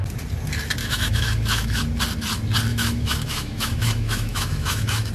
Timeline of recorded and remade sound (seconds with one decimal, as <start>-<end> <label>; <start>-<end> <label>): 0.0-0.8 recorded; 0.8-1.8 remade; 1.8-2.7 recorded; 2.7-5.1 remade